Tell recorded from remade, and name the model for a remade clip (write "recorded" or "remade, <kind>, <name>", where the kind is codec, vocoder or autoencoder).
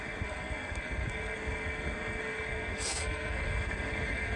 remade, codec, SNAC